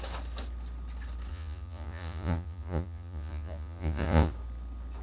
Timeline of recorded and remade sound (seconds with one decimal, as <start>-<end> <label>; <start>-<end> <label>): 0.0-1.3 recorded; 1.3-4.3 remade; 4.3-5.0 recorded